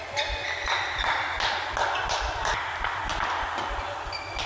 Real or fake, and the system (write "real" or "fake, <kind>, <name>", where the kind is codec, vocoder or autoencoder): real